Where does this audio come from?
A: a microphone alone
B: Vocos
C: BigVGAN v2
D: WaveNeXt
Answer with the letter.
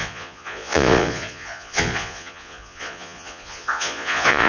B